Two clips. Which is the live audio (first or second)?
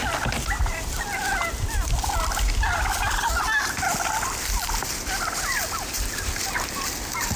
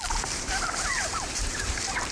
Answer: first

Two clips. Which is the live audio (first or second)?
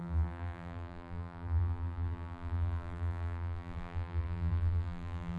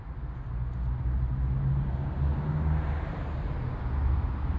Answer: second